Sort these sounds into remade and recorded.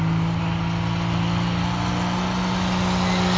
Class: recorded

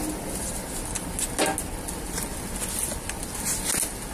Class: recorded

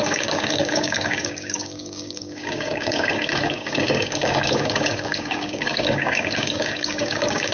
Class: remade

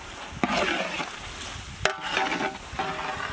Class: recorded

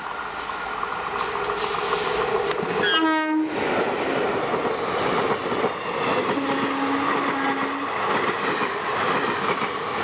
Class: recorded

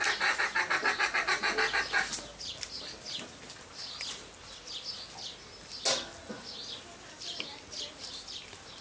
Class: recorded